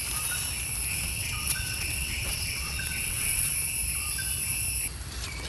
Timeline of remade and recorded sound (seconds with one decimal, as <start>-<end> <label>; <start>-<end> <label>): 0.0-0.9 recorded; 0.9-3.5 remade; 3.5-5.5 recorded